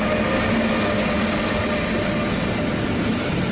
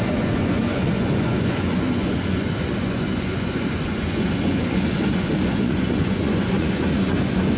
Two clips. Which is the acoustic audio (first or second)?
first